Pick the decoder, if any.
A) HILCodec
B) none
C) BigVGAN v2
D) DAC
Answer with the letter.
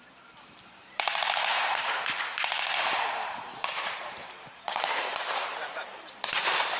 C